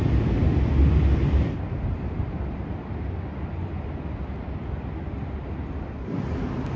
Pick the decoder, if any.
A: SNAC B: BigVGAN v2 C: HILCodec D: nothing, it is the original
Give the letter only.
D